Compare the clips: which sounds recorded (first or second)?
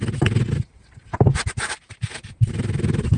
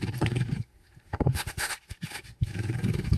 first